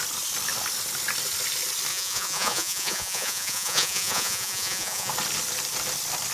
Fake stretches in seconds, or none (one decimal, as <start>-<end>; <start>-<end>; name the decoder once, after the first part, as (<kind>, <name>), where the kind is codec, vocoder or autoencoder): 1.9-5.1 (vocoder, Vocos)